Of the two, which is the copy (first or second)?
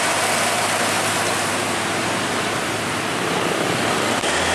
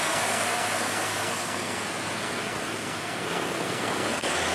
second